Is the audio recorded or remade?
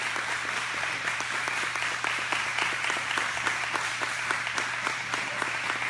recorded